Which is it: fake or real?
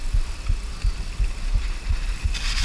real